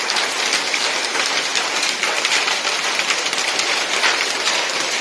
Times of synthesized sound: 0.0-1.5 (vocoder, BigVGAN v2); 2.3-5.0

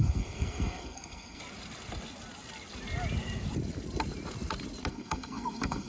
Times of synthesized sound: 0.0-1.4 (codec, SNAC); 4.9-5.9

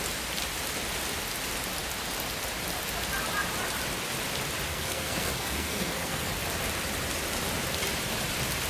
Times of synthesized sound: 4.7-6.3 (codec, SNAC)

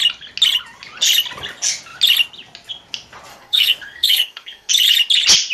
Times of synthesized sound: 3.3-4.7 (codec, SNAC)